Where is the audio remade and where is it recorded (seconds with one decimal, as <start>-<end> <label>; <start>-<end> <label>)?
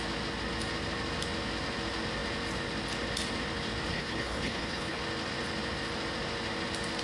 0.0-3.9 recorded; 3.9-5.0 remade; 5.0-7.0 recorded